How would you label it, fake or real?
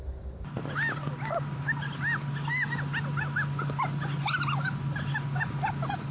real